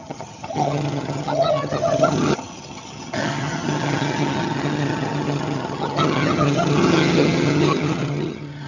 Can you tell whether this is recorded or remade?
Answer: remade